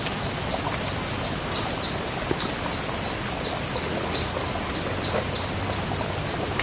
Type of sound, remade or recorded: recorded